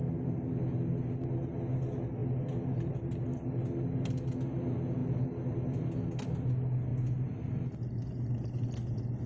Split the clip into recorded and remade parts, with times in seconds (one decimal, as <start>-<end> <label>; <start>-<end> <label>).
0.0-5.0 recorded; 5.0-5.8 remade; 5.8-9.3 recorded

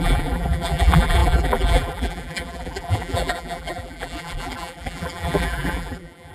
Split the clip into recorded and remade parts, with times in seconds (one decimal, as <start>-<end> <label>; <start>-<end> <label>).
0.0-6.3 remade

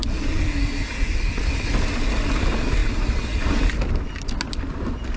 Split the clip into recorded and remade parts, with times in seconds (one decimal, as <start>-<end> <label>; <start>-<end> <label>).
0.0-5.2 recorded

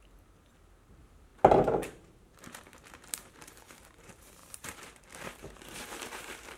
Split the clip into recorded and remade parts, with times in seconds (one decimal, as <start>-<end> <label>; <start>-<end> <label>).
0.0-6.6 remade

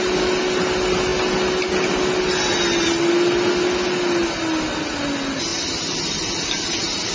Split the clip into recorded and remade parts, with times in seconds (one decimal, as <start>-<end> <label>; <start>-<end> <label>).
0.0-7.1 recorded